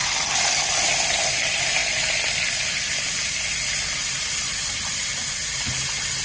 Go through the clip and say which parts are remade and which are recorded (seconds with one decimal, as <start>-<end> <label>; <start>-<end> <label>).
0.0-6.2 recorded